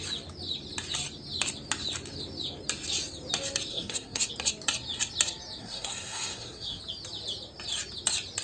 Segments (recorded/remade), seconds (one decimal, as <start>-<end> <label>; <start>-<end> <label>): 0.0-3.7 recorded; 3.7-4.3 remade; 4.3-5.6 recorded; 5.6-6.8 remade; 6.8-8.4 recorded